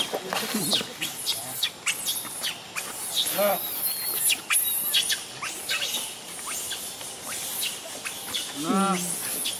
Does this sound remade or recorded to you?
recorded